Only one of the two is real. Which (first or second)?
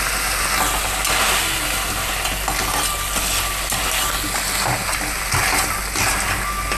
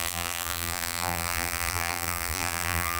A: first